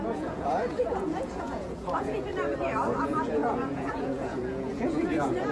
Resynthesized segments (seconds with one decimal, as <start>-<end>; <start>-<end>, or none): 0.0-2.3; 3.0-5.5